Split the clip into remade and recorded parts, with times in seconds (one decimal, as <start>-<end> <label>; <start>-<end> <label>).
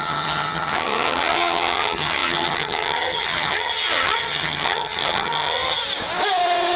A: 0.0-5.8 remade; 5.8-6.8 recorded